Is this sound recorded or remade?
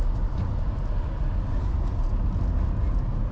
recorded